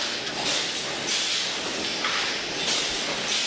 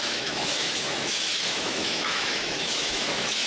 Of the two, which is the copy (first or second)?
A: second